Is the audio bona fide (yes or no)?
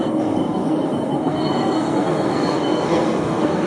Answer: no